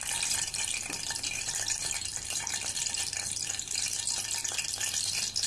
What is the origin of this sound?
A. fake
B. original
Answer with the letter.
A